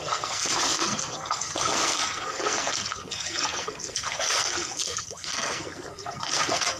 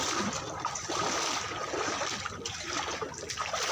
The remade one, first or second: first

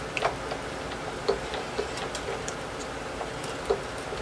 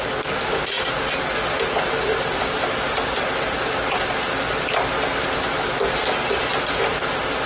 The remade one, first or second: first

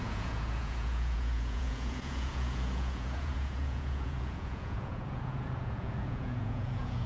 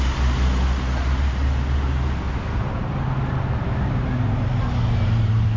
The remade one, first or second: first